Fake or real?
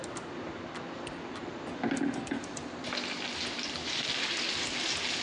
real